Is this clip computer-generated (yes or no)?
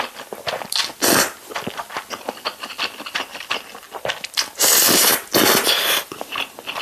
no